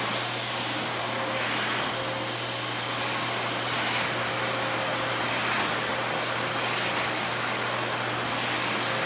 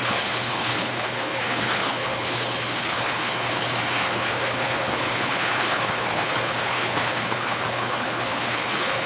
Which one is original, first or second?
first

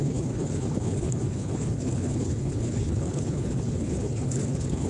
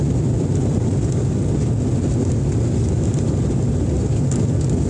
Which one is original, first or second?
second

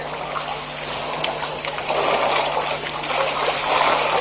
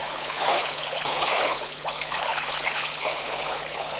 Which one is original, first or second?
first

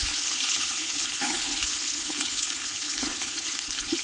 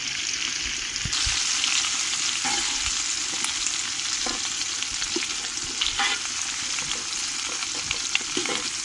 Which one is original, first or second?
second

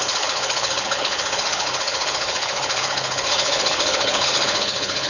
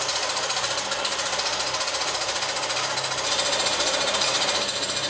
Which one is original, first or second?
second